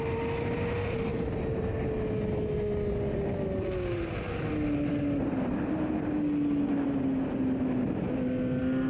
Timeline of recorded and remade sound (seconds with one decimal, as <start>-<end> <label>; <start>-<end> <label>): 0.0-8.9 recorded